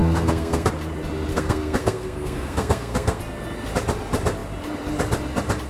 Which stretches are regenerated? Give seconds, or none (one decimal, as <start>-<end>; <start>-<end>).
0.0-0.7; 1.3-3.2